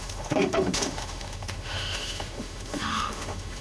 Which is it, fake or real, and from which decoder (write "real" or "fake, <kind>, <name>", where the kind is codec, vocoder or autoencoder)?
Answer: fake, autoencoder, DAC-VAE